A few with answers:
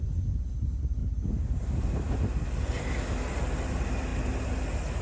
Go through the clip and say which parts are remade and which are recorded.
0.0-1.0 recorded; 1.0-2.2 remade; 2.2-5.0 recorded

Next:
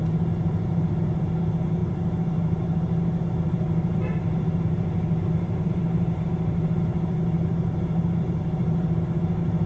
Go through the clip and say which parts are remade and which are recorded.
0.0-9.7 remade

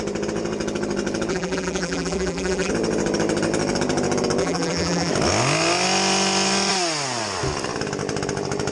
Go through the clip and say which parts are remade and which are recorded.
0.0-1.3 recorded; 1.3-2.7 remade; 2.7-4.4 recorded; 4.4-5.1 remade; 5.1-8.7 recorded

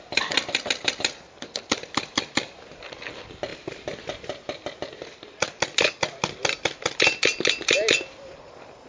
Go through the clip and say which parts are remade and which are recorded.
0.0-8.9 recorded

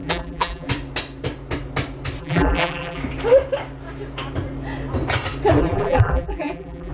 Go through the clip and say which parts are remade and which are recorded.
0.0-0.7 remade; 0.7-2.2 recorded; 2.2-3.0 remade; 3.0-5.6 recorded; 5.6-6.9 remade